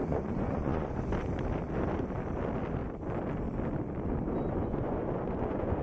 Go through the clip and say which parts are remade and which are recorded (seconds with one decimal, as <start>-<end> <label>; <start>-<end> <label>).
0.0-1.0 remade; 1.0-4.4 recorded; 4.4-5.8 remade